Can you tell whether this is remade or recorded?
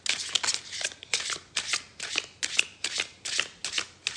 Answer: recorded